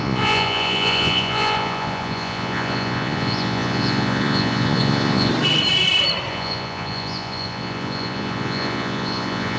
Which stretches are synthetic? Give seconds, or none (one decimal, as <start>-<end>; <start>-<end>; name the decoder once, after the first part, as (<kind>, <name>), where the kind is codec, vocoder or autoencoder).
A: 0.0-5.3 (vocoder, Vocos); 6.3-9.6